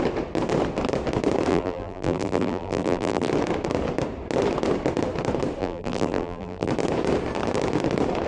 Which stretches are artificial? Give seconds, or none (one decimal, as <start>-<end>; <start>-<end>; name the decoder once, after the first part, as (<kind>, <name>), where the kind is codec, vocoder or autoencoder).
1.5-3.3 (vocoder, BigVGAN v2); 5.6-6.7